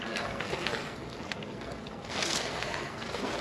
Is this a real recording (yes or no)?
no